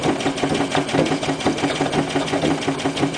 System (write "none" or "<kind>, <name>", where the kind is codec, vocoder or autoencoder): vocoder, Vocos